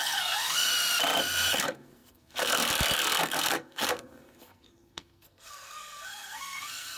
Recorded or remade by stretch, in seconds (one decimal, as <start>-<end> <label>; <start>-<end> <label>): 0.0-0.7 remade; 0.7-1.5 recorded; 1.5-7.0 remade

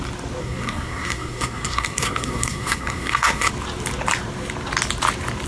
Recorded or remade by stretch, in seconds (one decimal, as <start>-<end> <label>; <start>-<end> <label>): 0.0-0.4 recorded; 0.4-3.5 remade; 3.5-5.5 recorded

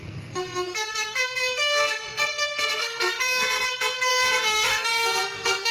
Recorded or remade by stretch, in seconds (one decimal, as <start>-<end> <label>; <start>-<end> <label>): 0.0-5.7 remade

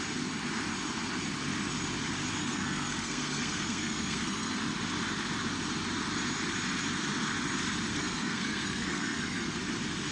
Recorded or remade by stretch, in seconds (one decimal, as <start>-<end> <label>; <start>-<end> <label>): 0.0-2.4 recorded; 2.4-4.6 remade; 4.6-7.9 recorded; 7.9-9.6 remade; 9.6-10.1 recorded

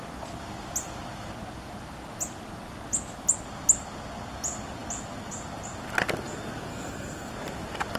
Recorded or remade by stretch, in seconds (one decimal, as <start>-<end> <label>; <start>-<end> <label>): 0.0-6.7 recorded; 6.7-7.3 remade; 7.3-8.0 recorded

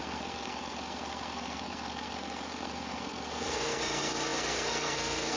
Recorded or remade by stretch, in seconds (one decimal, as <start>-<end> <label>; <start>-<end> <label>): 0.0-5.4 remade